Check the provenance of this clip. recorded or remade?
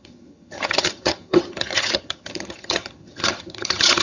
remade